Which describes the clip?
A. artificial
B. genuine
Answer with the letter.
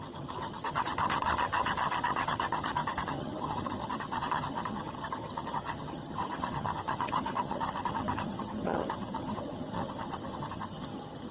A